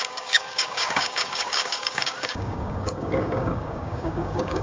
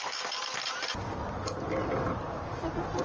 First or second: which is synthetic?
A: first